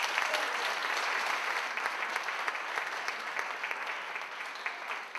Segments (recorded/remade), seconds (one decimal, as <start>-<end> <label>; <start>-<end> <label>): 0.0-5.2 recorded